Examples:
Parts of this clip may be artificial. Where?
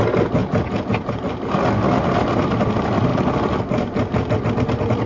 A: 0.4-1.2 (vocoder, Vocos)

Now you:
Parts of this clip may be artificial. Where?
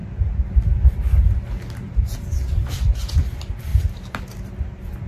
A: 0.0-0.6 (vocoder, BigVGAN v2); 3.7-4.2